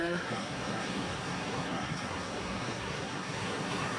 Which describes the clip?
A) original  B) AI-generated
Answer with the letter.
B